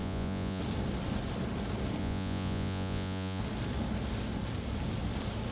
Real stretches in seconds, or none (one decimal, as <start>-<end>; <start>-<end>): 0.6-2.0; 3.4-5.5